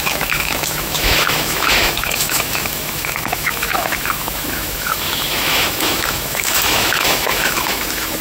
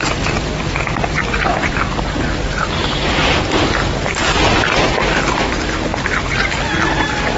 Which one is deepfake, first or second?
first